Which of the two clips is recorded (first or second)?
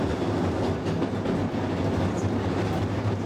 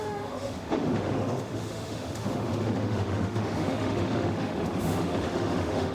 first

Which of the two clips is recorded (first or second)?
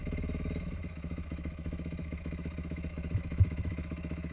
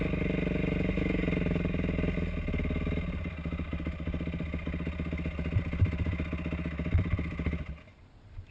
second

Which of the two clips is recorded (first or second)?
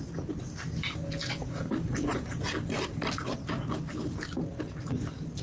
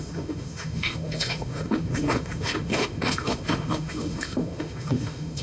first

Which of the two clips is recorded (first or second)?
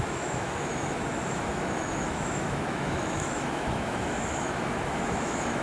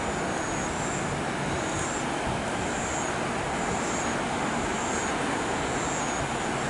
second